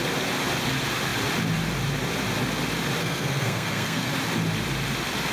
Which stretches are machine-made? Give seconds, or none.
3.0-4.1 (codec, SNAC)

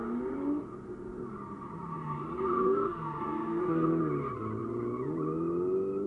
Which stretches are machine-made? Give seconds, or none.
2.6-4.0 (codec, SNAC)

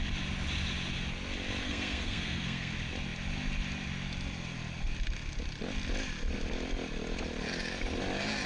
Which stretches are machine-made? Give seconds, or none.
1.6-2.7 (codec, SNAC)

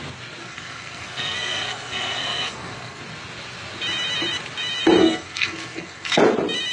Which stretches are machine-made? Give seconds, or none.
0.4-3.0 (codec, SNAC); 5.0-6.2

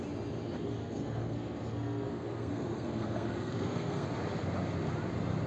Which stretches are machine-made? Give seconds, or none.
0.8-4.1 (codec, SNAC)

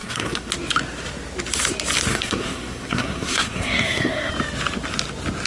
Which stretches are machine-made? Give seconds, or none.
0.0-0.5 (codec, SNAC); 2.1-4.3

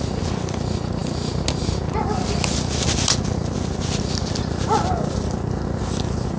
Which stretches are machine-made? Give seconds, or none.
none